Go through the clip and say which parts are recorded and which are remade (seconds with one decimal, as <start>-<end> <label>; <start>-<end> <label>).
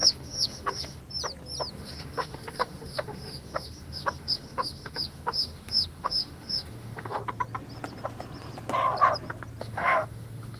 0.0-1.0 remade; 1.0-1.7 recorded; 1.7-7.2 remade; 7.2-9.6 recorded; 9.6-10.6 remade